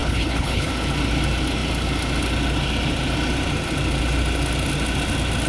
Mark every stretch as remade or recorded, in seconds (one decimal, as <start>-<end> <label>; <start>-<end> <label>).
0.0-0.7 remade; 0.7-5.5 recorded